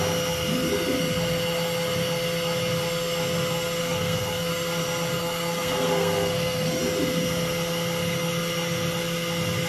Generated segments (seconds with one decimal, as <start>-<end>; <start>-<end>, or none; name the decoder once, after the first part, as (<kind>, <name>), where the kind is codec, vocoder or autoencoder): 3.8-4.5 (codec, SNAC); 5.2-6.8